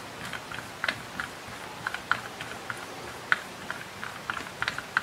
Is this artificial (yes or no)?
no